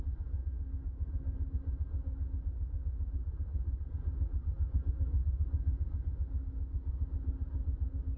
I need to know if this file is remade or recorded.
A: recorded